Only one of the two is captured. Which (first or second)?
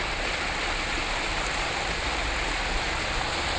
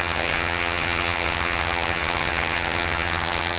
first